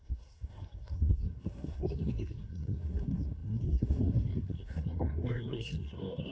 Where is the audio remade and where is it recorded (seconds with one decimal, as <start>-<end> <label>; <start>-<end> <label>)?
0.0-6.3 remade

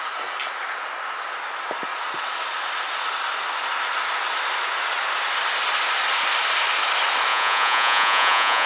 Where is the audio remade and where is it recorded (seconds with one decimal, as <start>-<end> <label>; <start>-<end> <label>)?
0.0-7.3 recorded; 7.3-8.7 remade

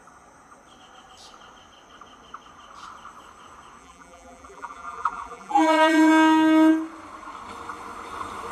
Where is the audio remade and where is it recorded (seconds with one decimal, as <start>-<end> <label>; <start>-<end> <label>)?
0.0-3.8 recorded; 3.8-6.1 remade; 6.1-8.5 recorded

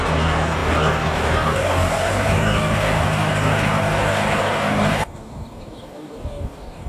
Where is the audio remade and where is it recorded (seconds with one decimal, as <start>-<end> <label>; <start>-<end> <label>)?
0.0-6.9 remade

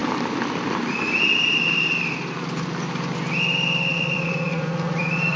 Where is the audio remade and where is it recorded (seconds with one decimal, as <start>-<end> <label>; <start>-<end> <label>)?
0.0-3.9 recorded; 3.9-5.4 remade